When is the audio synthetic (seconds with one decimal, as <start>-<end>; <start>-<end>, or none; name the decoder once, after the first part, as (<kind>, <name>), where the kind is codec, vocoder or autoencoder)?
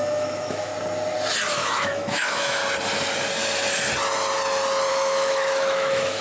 0.0-0.7 (autoencoder, DAC-VAE); 1.5-2.6; 4.9-6.2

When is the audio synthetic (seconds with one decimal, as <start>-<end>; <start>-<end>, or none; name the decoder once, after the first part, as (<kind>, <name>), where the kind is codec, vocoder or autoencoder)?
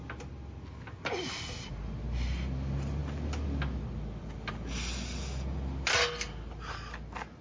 none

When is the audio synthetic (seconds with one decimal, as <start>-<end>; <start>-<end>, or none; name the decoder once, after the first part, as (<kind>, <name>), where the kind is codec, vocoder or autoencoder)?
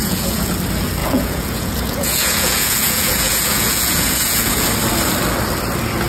0.0-0.5 (vocoder, Vocos); 1.0-4.7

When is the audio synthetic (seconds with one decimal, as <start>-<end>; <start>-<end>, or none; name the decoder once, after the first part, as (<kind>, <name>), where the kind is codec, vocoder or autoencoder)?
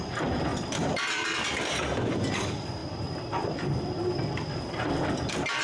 0.0-5.6 (vocoder, BigVGAN v2)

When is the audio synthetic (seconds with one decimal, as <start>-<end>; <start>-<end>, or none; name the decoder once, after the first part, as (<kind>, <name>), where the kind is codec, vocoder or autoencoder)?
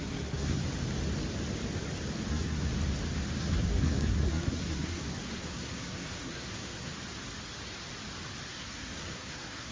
0.0-0.6 (codec, SNAC); 2.3-2.7; 3.4-6.9; 8.5-9.7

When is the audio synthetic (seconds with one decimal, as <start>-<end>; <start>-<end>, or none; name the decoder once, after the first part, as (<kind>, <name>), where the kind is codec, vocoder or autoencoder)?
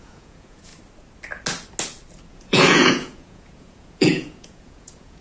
0.0-0.7 (vocoder, Vocos); 2.3-5.2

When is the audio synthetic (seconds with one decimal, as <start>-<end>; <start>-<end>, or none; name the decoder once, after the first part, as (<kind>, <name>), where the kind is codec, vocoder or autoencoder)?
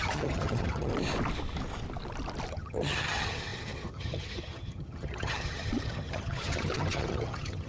0.0-0.9 (vocoder, HiFi-GAN); 2.5-7.7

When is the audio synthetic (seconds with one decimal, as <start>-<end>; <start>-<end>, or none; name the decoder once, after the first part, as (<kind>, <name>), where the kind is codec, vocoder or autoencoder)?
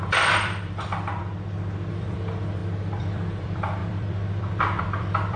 0.0-1.2 (vocoder, BigVGAN v2); 1.9-5.4